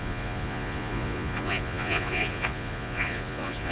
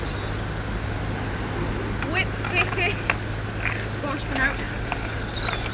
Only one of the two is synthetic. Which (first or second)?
first